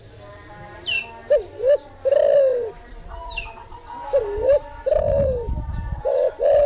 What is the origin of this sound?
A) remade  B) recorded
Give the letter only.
B